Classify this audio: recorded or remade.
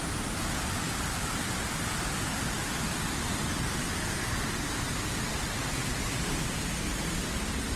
recorded